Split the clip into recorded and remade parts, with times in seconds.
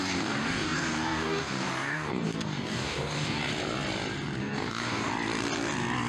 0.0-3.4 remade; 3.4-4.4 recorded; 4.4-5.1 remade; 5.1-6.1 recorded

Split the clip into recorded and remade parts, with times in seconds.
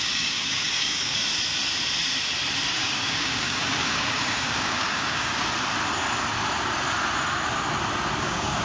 0.0-1.2 remade; 1.2-2.7 recorded; 2.7-5.3 remade; 5.3-8.2 recorded; 8.2-8.6 remade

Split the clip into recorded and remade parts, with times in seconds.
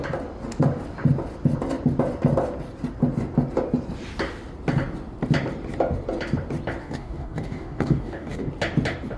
0.0-6.8 recorded; 6.8-8.5 remade; 8.5-9.2 recorded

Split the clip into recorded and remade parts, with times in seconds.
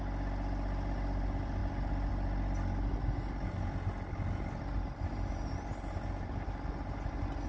0.0-7.5 recorded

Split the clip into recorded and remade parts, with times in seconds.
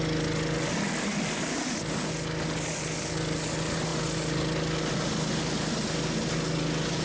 0.0-7.0 recorded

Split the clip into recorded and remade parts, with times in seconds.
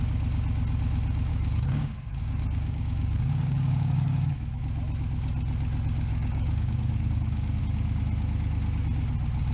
0.0-1.3 recorded; 1.3-4.6 remade; 4.6-6.1 recorded; 6.1-7.6 remade; 7.6-9.5 recorded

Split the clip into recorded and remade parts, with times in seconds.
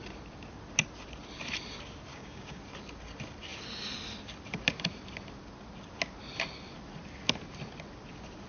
0.0-2.1 recorded; 2.1-2.6 remade; 2.6-8.5 recorded